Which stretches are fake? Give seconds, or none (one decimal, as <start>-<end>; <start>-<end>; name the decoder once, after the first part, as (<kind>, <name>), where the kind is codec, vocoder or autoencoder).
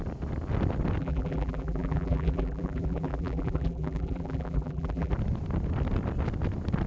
1.0-5.1 (vocoder, BigVGAN v2)